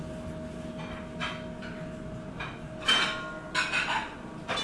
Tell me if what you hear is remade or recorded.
recorded